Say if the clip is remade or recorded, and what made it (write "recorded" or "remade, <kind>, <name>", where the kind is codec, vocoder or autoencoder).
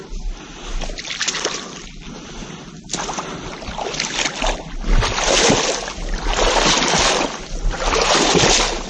recorded